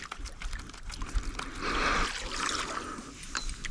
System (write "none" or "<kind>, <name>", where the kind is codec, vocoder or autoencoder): none